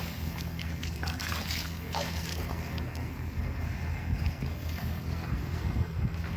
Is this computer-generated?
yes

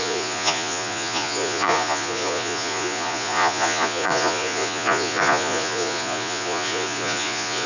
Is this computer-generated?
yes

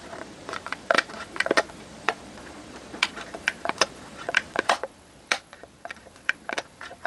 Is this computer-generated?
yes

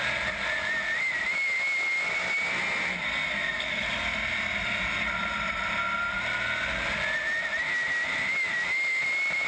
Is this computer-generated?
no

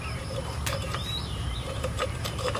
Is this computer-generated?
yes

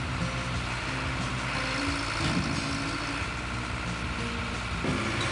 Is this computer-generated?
no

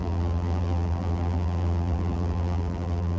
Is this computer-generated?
yes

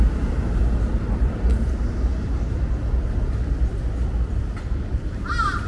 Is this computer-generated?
no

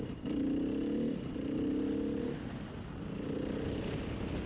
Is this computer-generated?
no